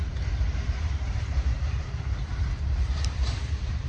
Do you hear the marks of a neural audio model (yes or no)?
yes